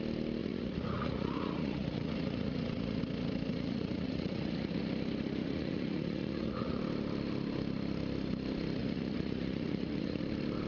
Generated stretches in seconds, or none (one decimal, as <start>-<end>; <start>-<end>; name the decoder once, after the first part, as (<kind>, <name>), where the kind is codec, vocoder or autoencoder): 0.4-3.0 (vocoder, Vocos); 3.5-4.8; 5.4-6.8; 8.8-10.2